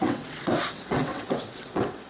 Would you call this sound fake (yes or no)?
yes